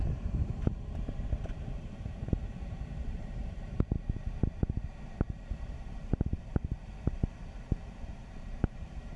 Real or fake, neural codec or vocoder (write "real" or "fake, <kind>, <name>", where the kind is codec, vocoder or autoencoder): fake, vocoder, BigVGAN v2